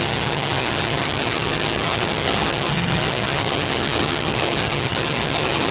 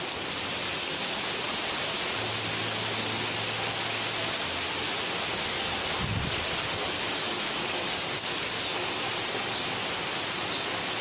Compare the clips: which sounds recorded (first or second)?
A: second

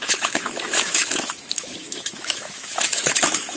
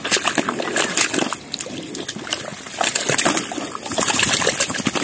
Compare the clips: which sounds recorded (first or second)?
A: second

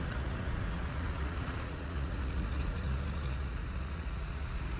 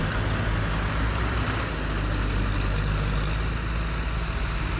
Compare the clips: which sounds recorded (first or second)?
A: second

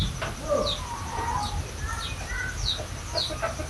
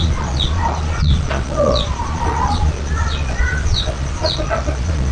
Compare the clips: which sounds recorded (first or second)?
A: first